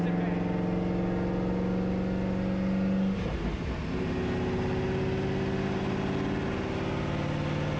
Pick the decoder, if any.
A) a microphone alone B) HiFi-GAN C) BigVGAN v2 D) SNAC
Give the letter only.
A